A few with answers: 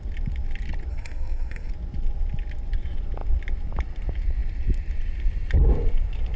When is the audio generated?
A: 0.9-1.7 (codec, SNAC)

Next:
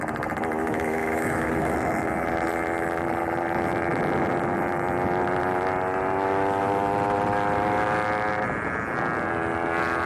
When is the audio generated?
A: 0.6-1.7 (autoencoder, DAC-VAE)

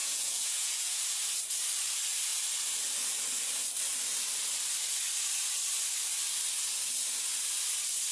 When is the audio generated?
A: 0.0-1.0 (vocoder, Vocos)